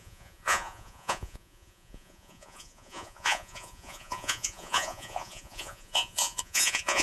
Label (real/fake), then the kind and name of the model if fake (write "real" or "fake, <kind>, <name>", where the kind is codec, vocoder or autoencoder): fake, vocoder, Vocos